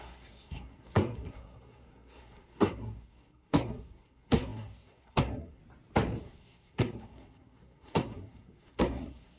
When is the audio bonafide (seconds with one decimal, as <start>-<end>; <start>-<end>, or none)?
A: 5.6-6.2